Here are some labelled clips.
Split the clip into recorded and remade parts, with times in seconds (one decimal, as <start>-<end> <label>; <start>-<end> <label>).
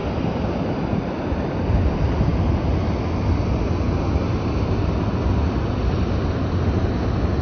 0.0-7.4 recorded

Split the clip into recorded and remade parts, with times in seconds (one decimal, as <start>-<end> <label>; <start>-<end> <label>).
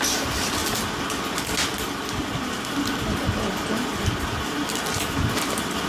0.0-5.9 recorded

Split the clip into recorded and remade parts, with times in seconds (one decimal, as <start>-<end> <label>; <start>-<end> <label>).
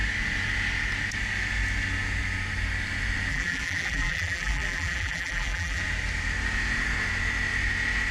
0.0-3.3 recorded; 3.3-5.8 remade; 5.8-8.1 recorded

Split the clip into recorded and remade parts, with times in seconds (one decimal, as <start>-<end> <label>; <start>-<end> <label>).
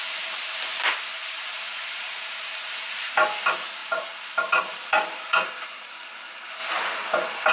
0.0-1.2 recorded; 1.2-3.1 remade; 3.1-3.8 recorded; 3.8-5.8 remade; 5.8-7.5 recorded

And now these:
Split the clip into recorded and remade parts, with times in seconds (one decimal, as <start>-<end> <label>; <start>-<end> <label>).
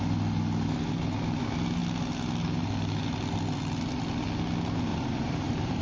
0.0-4.9 recorded; 4.9-5.8 remade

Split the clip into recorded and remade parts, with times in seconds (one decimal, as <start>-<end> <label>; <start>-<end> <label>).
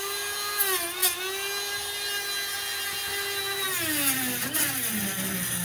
0.0-5.6 recorded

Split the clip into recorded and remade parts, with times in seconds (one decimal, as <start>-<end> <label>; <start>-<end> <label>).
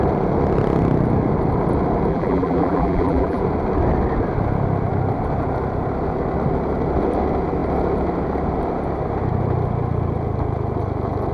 0.0-2.1 recorded; 2.1-3.4 remade; 3.4-11.3 recorded